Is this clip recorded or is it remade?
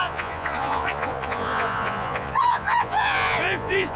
remade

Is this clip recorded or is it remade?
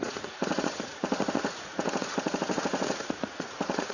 remade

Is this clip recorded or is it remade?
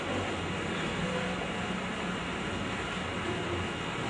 recorded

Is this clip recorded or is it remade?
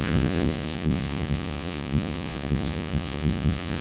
remade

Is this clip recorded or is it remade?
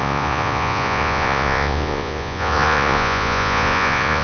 remade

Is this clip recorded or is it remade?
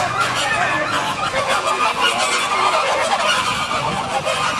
remade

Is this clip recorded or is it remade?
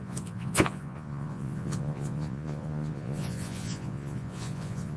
remade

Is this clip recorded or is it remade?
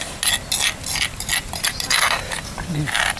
recorded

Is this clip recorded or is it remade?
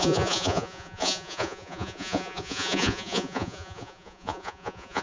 remade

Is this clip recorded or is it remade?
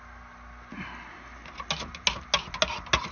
recorded